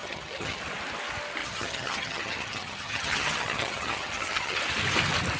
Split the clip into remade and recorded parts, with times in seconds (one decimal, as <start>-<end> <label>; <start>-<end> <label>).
0.0-0.6 remade; 0.6-1.4 recorded; 1.4-4.6 remade; 4.6-5.4 recorded